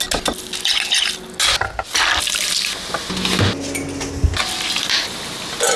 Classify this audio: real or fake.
real